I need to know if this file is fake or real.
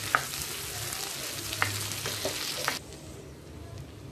real